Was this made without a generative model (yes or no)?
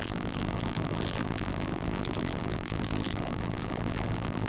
no